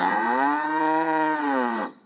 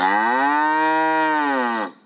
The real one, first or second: second